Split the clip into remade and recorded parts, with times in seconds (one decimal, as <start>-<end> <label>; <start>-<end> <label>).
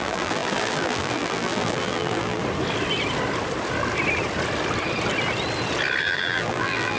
0.0-2.4 remade; 2.4-6.0 recorded; 6.0-7.0 remade